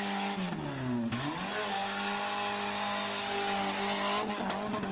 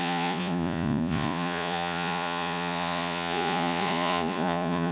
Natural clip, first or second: first